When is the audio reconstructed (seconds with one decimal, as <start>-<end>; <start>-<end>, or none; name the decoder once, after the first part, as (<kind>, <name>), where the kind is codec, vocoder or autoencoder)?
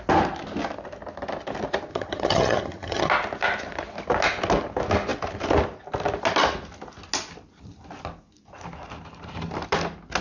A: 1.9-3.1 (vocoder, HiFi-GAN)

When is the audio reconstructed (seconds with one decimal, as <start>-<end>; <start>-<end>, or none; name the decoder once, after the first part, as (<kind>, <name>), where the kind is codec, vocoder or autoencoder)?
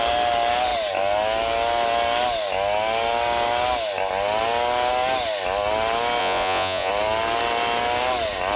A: 6.2-6.9 (vocoder, Vocos)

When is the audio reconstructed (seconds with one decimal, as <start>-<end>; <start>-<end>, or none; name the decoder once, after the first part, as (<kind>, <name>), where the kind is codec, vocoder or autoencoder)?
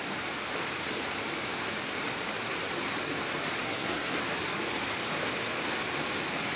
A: 3.6-4.2 (codec, SNAC)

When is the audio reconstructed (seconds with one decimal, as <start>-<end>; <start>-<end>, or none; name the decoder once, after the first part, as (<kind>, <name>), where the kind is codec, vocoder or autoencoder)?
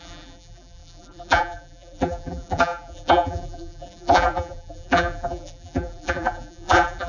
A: 0.0-7.1 (vocoder, BigVGAN v2)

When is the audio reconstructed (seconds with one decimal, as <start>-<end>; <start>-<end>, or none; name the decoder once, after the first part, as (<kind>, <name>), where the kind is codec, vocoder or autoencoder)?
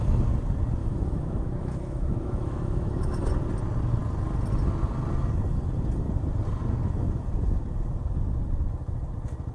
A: 0.8-3.3 (autoencoder, DAC-VAE)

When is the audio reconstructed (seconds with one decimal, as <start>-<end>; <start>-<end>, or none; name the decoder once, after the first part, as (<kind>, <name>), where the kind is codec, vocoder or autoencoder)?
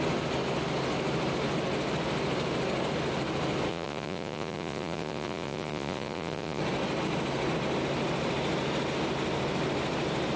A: 3.7-6.6 (vocoder, Vocos)